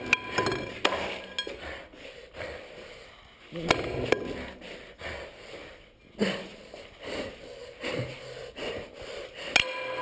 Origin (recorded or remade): recorded